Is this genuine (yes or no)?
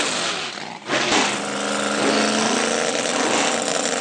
yes